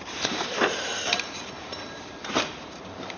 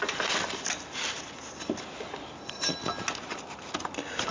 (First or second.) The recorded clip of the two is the second